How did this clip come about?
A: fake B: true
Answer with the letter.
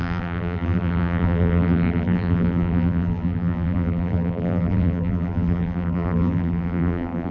A